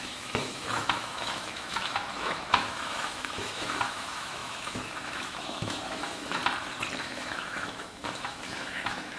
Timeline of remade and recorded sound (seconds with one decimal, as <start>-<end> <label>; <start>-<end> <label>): 0.0-6.4 remade; 6.4-7.0 recorded; 7.0-9.2 remade